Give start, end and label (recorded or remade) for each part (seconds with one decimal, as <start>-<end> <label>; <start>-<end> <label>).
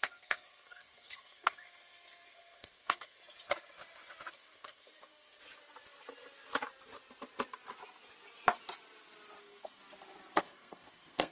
0.0-3.2 remade; 3.2-4.3 recorded; 4.3-5.4 remade; 5.4-9.4 recorded; 9.4-9.8 remade; 9.8-10.4 recorded; 10.4-11.3 remade